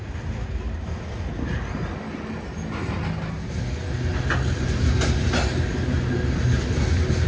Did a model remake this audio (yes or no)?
no